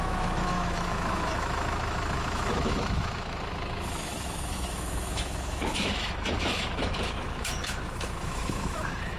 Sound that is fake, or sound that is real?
fake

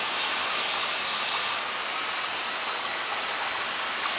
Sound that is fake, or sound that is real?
real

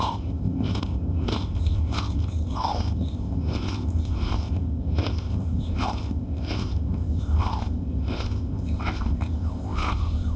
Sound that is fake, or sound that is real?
fake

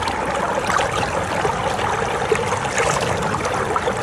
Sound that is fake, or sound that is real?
real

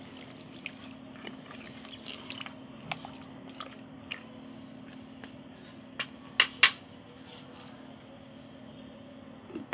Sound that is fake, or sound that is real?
real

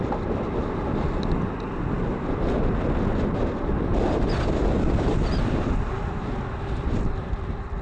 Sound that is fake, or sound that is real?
real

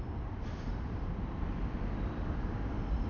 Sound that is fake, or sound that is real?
real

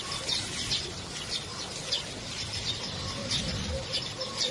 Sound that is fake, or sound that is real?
real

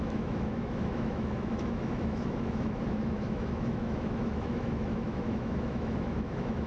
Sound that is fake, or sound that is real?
fake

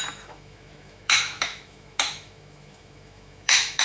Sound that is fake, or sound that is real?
fake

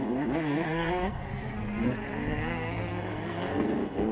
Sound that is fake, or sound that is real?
fake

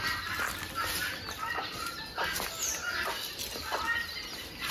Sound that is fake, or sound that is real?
real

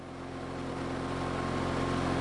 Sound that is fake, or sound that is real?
real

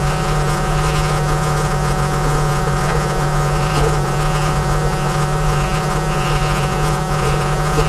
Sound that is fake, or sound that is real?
fake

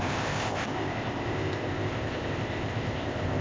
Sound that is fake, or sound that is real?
fake